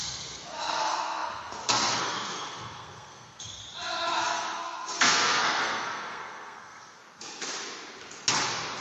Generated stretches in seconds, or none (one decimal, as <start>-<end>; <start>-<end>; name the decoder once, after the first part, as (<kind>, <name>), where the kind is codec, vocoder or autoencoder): 0.0-3.6 (codec, SNAC); 4.2-7.0